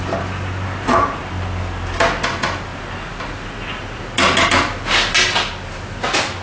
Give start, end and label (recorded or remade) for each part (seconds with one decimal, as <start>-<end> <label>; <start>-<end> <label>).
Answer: 0.0-6.4 recorded